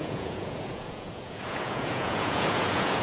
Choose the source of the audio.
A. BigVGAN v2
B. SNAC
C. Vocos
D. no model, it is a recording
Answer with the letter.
C